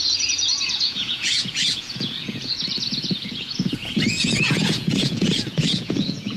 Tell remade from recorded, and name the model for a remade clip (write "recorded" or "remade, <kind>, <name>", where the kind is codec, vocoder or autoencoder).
remade, vocoder, Vocos